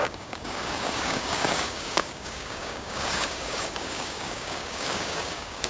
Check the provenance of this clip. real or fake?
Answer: fake